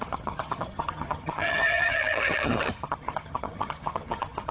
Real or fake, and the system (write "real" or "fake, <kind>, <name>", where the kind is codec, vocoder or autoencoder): fake, vocoder, HiFi-GAN